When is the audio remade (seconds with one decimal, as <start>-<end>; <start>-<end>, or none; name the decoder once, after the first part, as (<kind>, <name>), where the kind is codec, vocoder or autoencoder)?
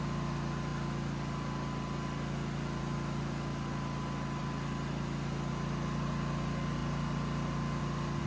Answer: none